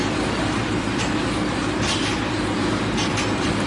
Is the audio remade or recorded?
recorded